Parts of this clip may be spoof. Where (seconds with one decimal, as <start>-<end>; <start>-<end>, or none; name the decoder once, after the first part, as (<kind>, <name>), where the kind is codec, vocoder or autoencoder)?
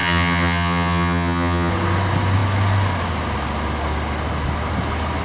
0.0-1.7 (vocoder, HiFi-GAN)